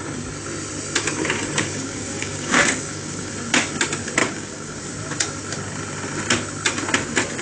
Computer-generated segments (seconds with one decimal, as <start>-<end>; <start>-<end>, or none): 1.4-3.3; 4.2-4.8